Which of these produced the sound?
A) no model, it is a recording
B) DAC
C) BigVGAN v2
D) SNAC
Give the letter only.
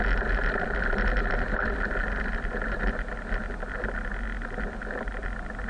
A